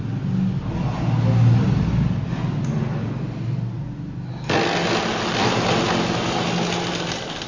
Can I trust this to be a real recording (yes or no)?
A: yes